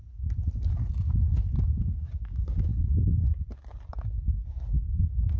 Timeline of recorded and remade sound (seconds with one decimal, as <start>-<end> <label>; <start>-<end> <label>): 0.0-1.6 recorded; 1.6-2.7 remade; 2.7-5.0 recorded; 5.0-5.4 remade